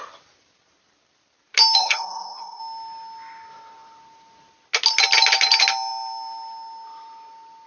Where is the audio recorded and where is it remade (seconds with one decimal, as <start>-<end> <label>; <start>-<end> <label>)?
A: 0.0-1.8 recorded; 1.8-2.6 remade; 2.6-7.7 recorded